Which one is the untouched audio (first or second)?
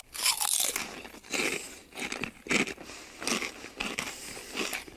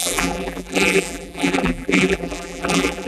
first